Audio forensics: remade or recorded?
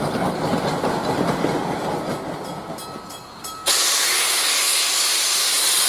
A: recorded